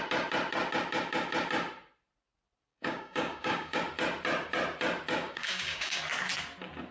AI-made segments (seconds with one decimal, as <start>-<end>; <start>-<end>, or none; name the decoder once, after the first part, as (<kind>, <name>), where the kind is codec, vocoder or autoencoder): 2.7-3.8 (codec, DAC); 5.2-6.0